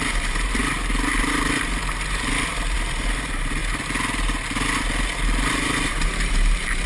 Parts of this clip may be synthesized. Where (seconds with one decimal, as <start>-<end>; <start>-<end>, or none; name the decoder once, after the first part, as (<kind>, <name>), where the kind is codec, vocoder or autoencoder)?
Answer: 0.0-0.6 (vocoder, BigVGAN v2); 1.9-3.6; 5.9-6.9